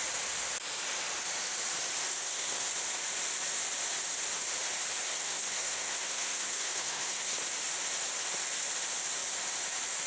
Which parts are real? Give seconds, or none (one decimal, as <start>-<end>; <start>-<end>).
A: 0.0-2.0; 2.7-5.0; 7.4-10.1